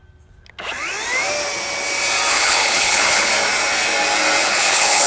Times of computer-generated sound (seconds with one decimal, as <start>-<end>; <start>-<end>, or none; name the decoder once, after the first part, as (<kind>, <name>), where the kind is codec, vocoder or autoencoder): 2.3-3.3 (codec, HILCodec); 4.4-5.1